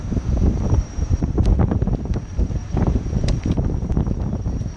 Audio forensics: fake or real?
fake